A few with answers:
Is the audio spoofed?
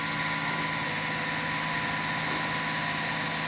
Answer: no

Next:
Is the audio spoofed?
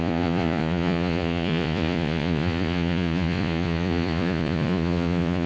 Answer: yes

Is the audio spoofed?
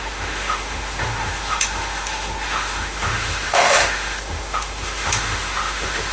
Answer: yes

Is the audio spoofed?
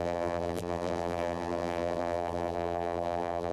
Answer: yes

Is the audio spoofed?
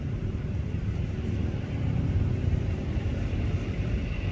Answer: yes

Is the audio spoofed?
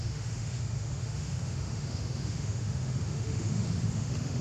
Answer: yes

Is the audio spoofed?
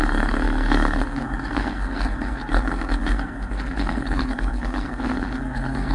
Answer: yes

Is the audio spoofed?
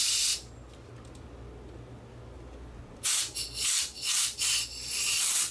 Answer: no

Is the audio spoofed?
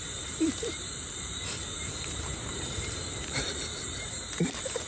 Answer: yes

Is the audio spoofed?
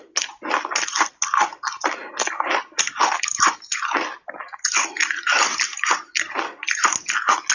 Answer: no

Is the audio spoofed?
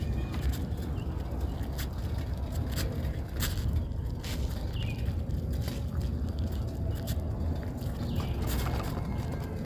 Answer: no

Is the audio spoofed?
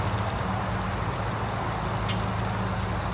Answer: no